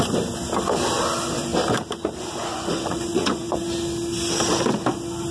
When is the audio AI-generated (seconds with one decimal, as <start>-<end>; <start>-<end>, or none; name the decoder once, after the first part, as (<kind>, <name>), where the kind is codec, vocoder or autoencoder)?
2.4-3.6 (vocoder, Vocos)